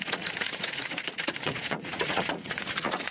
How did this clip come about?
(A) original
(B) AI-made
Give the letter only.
B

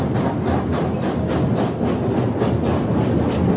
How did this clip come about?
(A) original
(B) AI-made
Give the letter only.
A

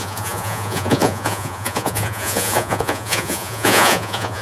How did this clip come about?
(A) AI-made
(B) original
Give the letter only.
A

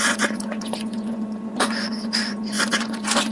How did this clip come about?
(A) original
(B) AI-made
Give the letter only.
B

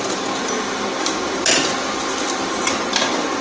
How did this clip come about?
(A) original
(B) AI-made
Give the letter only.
A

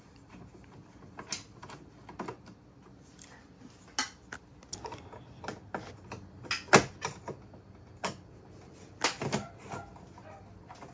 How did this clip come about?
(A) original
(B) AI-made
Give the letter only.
A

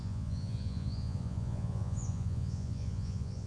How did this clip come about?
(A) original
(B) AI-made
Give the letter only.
B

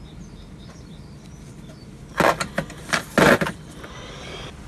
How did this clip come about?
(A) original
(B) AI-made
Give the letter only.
A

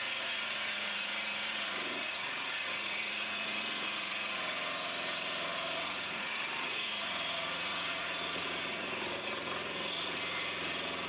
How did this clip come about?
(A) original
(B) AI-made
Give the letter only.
B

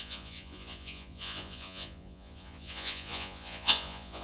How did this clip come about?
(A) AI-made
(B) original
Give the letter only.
A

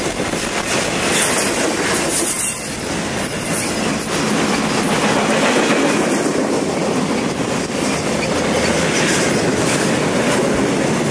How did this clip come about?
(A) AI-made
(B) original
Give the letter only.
B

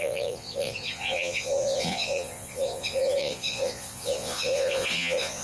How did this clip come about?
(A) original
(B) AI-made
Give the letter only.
B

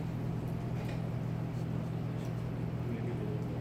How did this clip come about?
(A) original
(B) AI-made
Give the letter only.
A